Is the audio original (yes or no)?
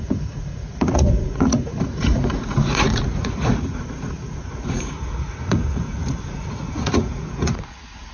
no